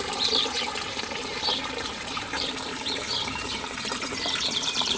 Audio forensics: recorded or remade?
remade